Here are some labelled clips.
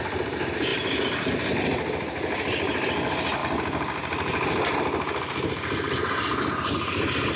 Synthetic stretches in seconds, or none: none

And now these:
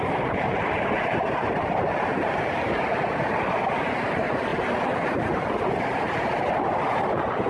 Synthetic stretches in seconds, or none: none

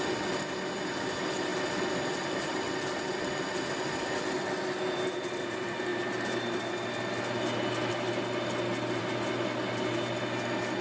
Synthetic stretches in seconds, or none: none